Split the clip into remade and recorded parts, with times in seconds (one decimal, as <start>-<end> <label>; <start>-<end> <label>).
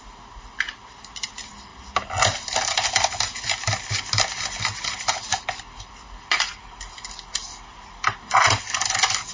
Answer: 0.0-9.3 recorded